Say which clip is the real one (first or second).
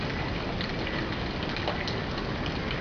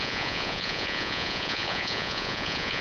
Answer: first